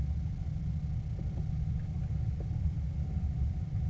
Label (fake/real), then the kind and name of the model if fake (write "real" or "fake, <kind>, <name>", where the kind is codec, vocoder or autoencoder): real